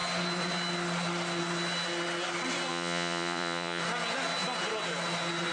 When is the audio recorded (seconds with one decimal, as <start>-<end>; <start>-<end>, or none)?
0.0-2.7; 3.8-5.5